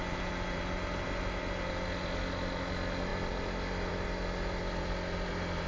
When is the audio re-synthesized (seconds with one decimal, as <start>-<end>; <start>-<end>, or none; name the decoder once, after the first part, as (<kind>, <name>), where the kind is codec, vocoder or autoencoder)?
none